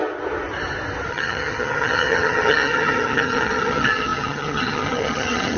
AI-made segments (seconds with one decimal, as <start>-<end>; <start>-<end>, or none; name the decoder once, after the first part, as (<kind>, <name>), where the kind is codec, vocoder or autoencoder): 1.1-5.6 (vocoder, HiFi-GAN)